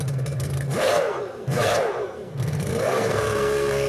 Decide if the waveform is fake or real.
fake